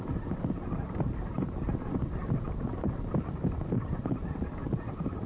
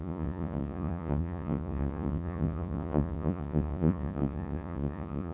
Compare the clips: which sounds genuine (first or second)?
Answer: first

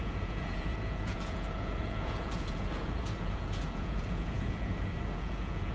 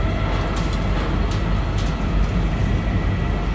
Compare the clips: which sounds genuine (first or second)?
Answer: second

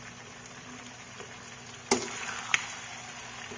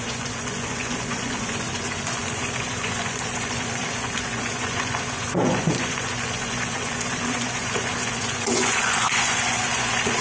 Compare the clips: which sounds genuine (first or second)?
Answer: first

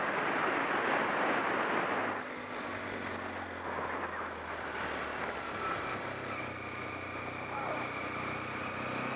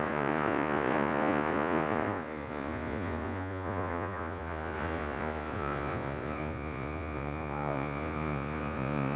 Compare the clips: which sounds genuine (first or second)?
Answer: first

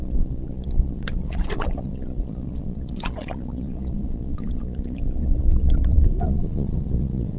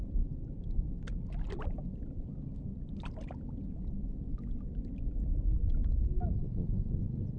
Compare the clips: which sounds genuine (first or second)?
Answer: second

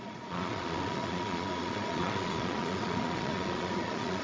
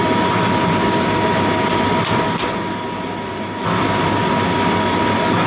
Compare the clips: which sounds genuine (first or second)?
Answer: second